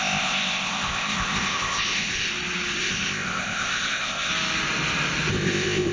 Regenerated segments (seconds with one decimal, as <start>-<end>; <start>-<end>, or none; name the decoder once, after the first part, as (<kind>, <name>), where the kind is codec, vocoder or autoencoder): 0.0-2.3 (codec, ZipCodec); 2.8-4.3; 5.3-5.9